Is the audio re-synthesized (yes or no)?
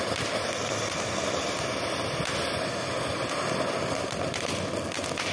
no